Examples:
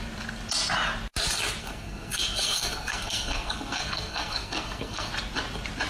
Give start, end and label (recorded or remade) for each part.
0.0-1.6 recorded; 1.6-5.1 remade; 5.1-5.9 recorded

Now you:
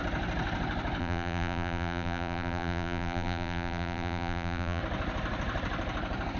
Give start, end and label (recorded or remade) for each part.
0.0-1.0 recorded; 1.0-4.8 remade; 4.8-6.4 recorded

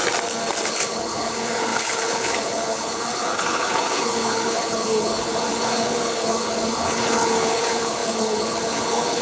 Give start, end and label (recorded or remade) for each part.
0.0-0.7 recorded; 0.7-9.2 remade